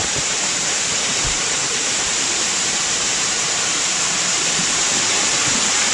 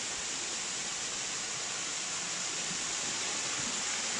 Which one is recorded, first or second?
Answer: second